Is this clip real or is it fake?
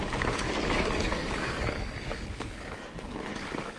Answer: fake